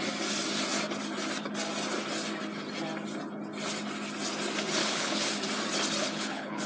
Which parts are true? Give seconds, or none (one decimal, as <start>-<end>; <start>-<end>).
0.0-4.8; 5.3-6.0